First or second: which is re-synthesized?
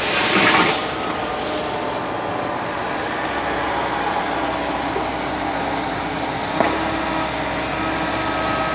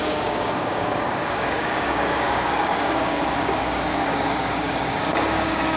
second